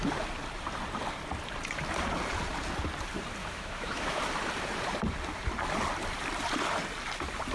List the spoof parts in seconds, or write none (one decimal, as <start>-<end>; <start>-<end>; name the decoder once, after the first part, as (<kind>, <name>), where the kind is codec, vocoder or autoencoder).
3.4-4.2 (autoencoder, DAC-VAE)